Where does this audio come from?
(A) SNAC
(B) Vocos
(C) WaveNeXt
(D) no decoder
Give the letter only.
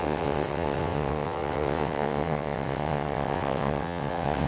C